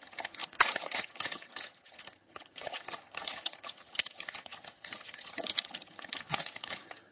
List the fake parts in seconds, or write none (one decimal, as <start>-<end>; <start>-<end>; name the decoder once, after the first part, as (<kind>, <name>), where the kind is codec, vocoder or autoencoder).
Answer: 0.0-7.1 (vocoder, HiFi-GAN)